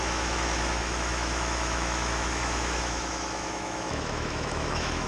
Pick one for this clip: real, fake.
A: fake